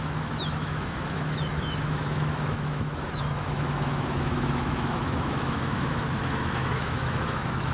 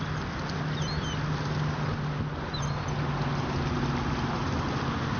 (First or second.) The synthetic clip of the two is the first